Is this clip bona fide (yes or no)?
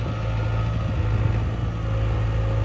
yes